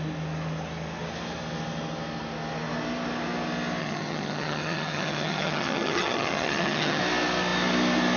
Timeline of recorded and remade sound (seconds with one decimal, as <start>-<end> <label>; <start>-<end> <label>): 0.0-3.8 recorded; 3.8-7.0 remade; 7.0-8.2 recorded